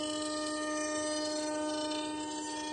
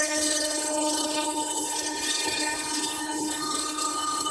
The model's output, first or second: second